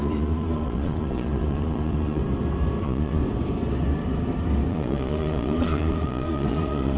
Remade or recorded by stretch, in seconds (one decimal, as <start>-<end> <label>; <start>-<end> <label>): 0.0-2.2 remade; 2.2-2.8 recorded; 2.8-3.2 remade; 3.2-4.7 recorded; 4.7-7.0 remade